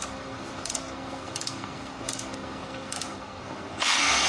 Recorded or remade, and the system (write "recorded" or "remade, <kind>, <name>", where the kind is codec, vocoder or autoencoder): remade, codec, SNAC